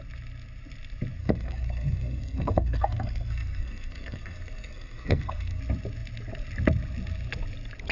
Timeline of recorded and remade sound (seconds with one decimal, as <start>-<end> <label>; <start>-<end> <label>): 0.0-1.2 recorded; 1.2-5.6 remade; 5.6-7.9 recorded

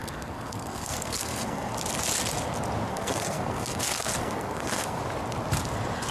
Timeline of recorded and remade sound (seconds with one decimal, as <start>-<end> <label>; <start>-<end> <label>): 0.0-1.7 remade; 1.7-2.9 recorded; 2.9-5.0 remade; 5.0-6.1 recorded

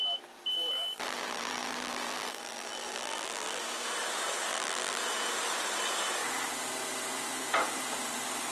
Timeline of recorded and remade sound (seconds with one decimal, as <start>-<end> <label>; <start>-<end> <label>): 0.0-0.5 recorded; 0.5-3.6 remade; 3.6-4.5 recorded; 4.5-5.0 remade; 5.0-8.5 recorded

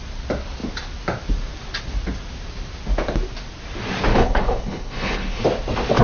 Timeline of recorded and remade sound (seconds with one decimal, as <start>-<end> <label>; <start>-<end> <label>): 0.0-4.1 recorded; 4.1-5.4 remade; 5.4-6.0 recorded

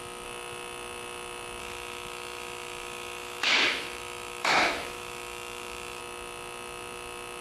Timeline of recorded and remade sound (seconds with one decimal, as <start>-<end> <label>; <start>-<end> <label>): 0.0-1.6 recorded; 1.6-6.0 remade; 6.0-7.4 recorded

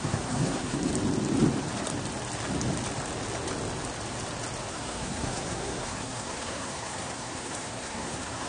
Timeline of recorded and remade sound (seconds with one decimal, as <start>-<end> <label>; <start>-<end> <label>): 0.0-0.9 remade; 0.9-4.7 recorded; 4.7-8.5 remade